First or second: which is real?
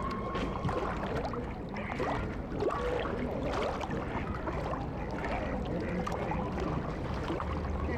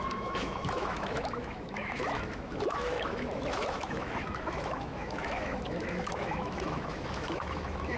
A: first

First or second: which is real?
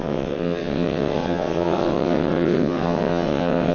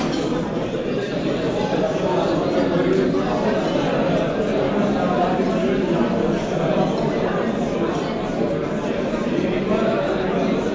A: second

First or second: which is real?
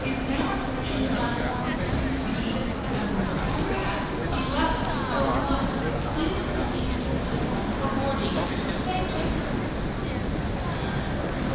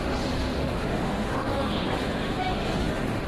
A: first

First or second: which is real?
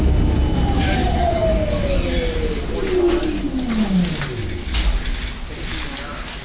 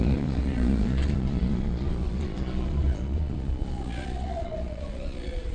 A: first